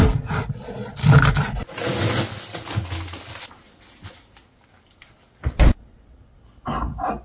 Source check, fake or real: real